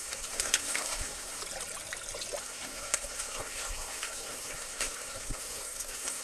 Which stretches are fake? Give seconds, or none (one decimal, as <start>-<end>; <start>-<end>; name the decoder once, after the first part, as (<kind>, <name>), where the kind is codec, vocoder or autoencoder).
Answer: 0.0-1.4 (codec, SNAC); 2.4-6.2